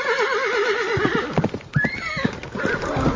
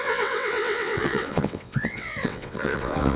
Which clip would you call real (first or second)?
first